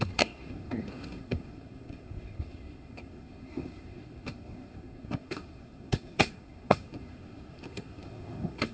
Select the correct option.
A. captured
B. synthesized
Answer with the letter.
B